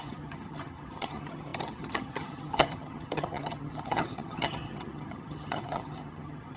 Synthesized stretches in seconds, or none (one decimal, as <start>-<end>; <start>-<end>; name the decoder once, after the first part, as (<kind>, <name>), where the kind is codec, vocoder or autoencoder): 0.0-6.6 (vocoder, HiFi-GAN)